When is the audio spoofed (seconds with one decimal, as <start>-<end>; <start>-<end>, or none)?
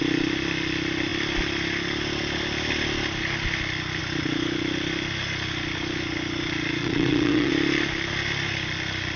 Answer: 6.8-7.5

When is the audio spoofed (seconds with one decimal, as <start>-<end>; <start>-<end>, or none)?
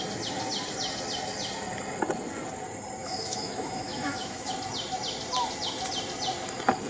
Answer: 3.0-4.5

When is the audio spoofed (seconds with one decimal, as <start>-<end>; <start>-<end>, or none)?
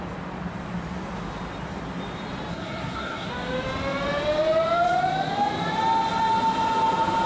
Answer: 2.5-3.3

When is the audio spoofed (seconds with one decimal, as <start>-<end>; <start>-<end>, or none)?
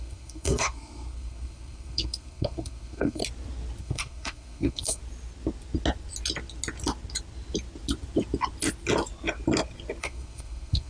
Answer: 0.0-3.2; 3.8-5.0; 10.0-10.9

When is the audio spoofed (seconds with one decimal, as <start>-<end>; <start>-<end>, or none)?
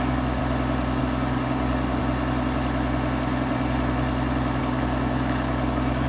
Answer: 0.0-0.4; 1.0-2.0; 4.6-6.1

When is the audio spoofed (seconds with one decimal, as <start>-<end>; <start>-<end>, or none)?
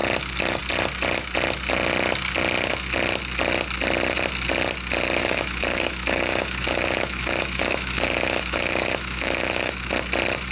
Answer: 5.2-9.7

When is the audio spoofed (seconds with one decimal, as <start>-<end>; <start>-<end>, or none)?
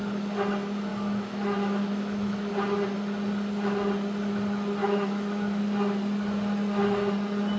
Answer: 0.9-2.5; 4.8-5.6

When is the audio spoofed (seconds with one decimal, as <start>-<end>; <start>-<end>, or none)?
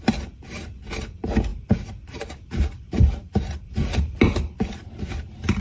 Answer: none